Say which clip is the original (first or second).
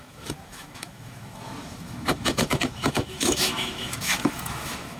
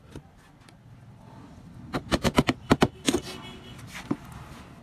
second